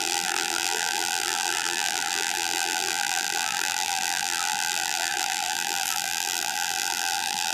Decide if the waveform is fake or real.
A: fake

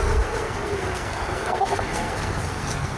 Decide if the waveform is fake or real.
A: fake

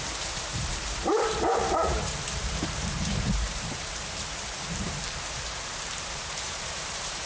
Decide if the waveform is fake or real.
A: fake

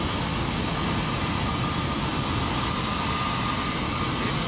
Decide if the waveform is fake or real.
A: real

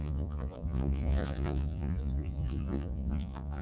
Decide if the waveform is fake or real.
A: fake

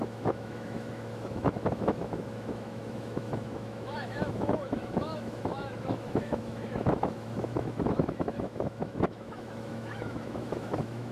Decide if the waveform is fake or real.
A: fake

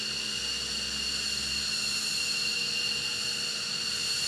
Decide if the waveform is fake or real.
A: real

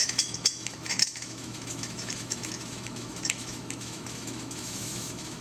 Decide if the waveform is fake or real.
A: fake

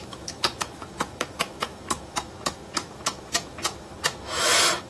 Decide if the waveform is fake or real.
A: fake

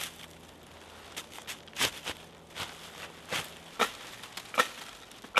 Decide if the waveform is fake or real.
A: real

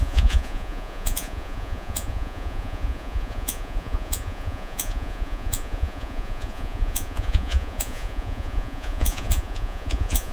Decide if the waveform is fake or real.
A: fake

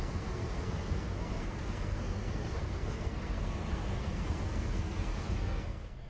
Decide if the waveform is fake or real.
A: fake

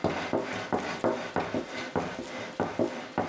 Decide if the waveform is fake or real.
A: real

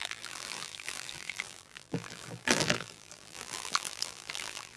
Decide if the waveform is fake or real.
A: fake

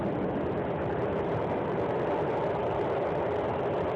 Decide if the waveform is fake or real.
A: real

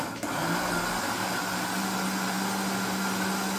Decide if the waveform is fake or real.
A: real